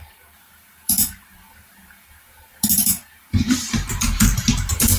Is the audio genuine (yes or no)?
no